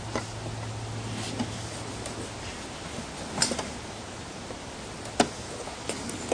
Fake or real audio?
real